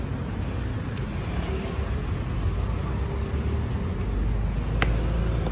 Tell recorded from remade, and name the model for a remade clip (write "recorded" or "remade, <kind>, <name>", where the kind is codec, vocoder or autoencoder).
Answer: recorded